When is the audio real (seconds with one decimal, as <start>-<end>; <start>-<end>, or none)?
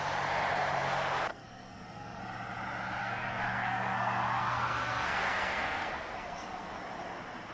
0.0-1.3; 2.2-3.0; 6.8-7.5